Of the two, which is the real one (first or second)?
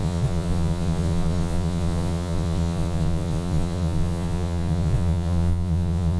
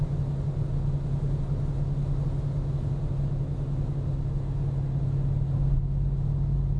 second